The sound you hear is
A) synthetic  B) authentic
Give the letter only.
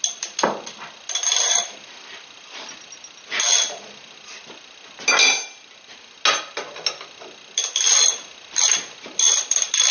B